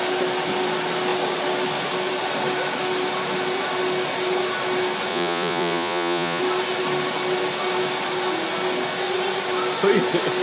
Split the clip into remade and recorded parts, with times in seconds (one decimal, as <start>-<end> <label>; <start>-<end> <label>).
0.0-5.1 recorded; 5.1-6.4 remade; 6.4-10.4 recorded